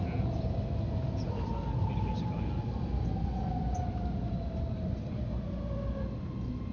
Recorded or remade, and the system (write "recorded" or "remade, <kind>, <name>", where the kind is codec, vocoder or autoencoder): recorded